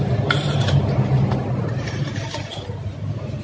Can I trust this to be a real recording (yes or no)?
yes